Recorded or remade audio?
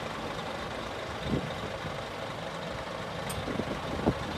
recorded